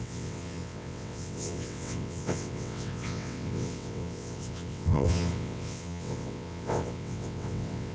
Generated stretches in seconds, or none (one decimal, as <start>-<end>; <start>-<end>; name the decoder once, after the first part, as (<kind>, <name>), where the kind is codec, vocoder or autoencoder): 0.0-7.9 (vocoder, WaveNeXt)